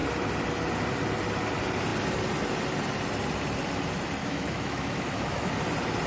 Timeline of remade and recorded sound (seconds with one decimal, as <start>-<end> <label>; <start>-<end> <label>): 0.0-4.2 recorded; 4.2-5.5 remade; 5.5-6.1 recorded

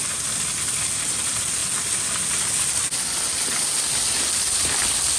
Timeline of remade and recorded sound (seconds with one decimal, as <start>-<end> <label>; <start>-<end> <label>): 0.0-5.2 recorded

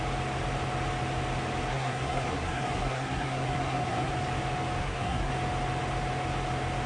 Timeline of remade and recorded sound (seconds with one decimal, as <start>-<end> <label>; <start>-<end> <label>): 0.0-1.7 recorded; 1.7-4.1 remade; 4.1-4.8 recorded; 4.8-5.3 remade; 5.3-6.9 recorded

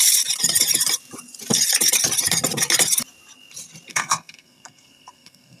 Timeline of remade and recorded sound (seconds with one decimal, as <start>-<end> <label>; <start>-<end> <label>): 0.0-3.9 recorded; 3.9-5.6 remade

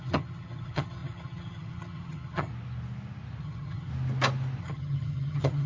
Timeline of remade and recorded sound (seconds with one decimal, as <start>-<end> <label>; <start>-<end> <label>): 0.0-2.5 remade; 2.5-3.4 recorded; 3.4-3.9 remade; 3.9-4.6 recorded; 4.6-5.7 remade

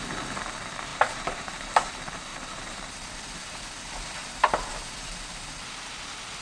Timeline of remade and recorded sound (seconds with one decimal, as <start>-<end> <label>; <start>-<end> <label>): 0.0-0.9 recorded; 0.9-1.9 remade; 1.9-2.3 recorded; 2.3-2.9 remade; 2.9-4.2 recorded; 4.2-4.7 remade; 4.7-6.4 recorded